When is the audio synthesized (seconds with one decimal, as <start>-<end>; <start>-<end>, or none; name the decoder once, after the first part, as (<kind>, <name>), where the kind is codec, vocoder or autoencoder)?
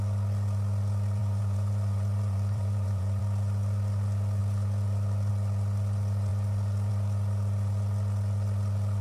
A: 1.2-3.2 (vocoder, BigVGAN v2)